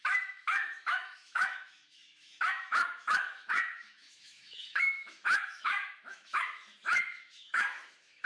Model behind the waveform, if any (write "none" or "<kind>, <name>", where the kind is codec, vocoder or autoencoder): autoencoder, DAC-VAE